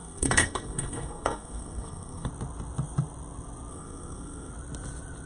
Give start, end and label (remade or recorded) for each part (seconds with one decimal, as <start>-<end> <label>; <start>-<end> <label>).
0.0-2.3 remade; 2.3-3.7 recorded; 3.7-4.5 remade; 4.5-5.3 recorded

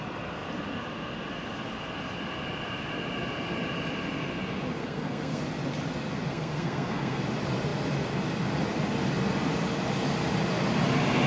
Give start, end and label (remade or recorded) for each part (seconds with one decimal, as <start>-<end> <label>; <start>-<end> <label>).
0.0-4.8 recorded; 4.8-5.4 remade; 5.4-6.3 recorded; 6.3-7.2 remade; 7.2-11.3 recorded